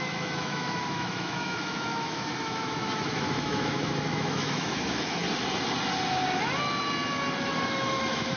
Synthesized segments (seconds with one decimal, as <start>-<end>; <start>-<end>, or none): 0.0-5.2; 7.6-8.4